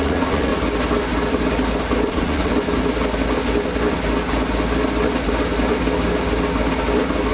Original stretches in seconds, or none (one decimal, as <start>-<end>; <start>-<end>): 0.5-2.1; 2.5-7.3